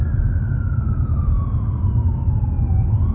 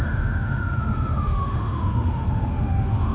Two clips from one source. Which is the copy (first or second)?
second